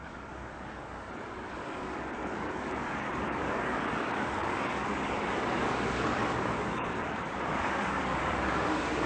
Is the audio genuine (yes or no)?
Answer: no